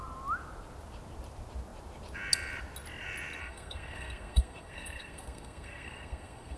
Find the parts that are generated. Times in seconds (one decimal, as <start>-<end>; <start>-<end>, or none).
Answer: 3.4-6.6